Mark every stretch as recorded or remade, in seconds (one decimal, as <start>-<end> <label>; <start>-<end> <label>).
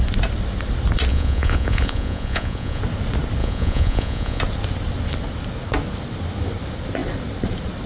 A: 0.0-1.1 recorded; 1.1-2.8 remade; 2.8-3.4 recorded; 3.4-4.4 remade; 4.4-7.9 recorded